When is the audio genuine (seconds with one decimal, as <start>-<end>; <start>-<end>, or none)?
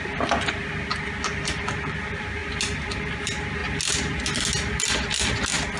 0.0-5.8